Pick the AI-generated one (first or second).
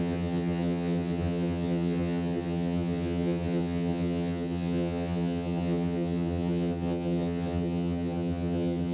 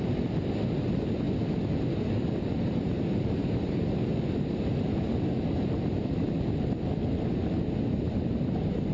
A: first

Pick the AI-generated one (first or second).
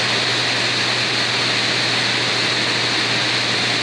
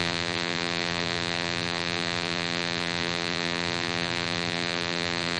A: second